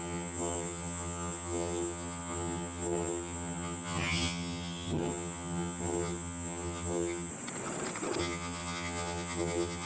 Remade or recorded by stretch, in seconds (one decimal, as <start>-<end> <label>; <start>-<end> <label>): 0.0-7.3 remade; 7.3-8.2 recorded; 8.2-9.9 remade